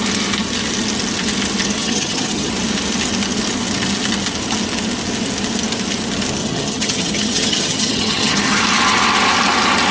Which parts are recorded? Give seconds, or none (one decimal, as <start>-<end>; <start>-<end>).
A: 0.0-1.8; 2.5-6.4; 8.6-9.9